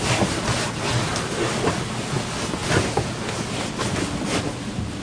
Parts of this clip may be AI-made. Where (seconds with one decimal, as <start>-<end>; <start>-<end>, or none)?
none